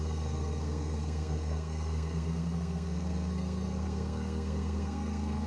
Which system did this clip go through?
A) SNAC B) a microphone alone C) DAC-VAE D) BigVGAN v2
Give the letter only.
A